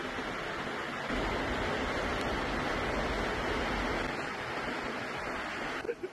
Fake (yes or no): no